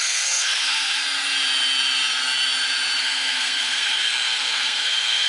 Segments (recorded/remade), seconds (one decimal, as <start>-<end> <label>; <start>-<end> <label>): 0.0-1.0 remade; 1.0-3.0 recorded; 3.0-5.3 remade